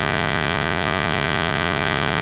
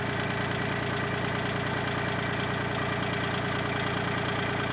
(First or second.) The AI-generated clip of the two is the first